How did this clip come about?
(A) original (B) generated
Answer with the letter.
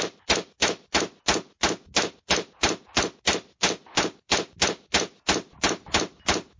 A